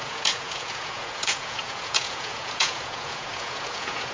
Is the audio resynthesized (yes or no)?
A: yes